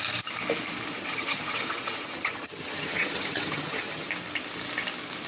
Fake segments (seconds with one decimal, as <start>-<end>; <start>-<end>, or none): 0.9-4.1